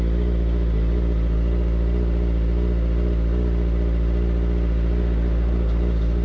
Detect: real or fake real